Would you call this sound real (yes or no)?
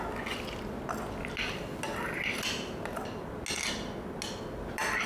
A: yes